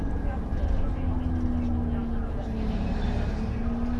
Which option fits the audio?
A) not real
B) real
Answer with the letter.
B